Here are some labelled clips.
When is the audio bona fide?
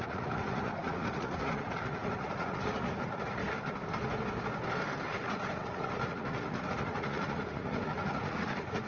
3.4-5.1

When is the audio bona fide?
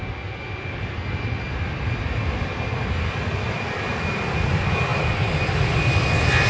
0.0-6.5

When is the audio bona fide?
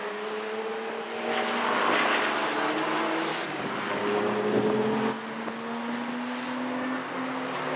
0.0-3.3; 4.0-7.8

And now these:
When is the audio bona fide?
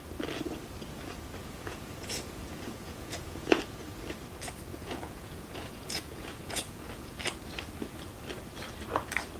0.0-1.4; 3.6-4.7; 7.2-9.4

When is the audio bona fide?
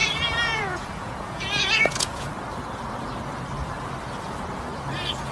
2.3-5.3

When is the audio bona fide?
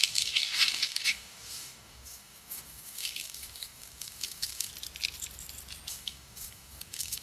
4.7-5.9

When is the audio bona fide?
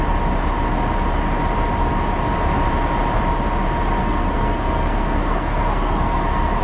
0.0-4.0